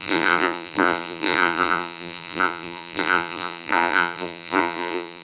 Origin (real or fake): fake